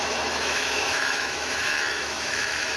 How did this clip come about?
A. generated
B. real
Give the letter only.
A